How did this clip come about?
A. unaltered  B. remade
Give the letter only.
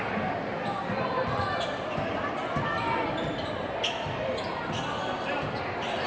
A